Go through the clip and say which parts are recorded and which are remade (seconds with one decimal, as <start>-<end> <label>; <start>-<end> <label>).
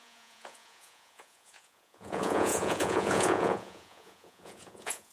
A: 0.0-5.1 remade